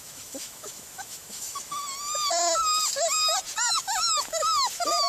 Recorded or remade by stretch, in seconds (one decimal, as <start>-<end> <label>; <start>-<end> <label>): 0.0-1.8 remade; 1.8-3.7 recorded; 3.7-5.1 remade